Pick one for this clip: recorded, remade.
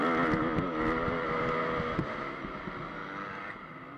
recorded